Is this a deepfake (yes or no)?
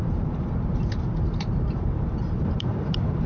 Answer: yes